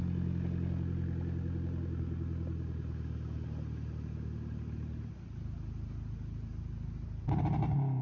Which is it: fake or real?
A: real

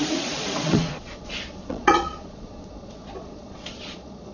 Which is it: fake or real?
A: fake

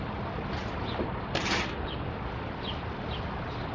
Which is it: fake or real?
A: real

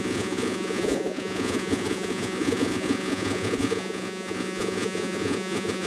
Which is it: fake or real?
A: fake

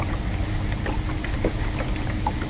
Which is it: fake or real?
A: real